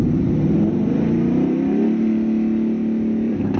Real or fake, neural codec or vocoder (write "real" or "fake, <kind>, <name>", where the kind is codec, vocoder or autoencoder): fake, vocoder, BigVGAN v2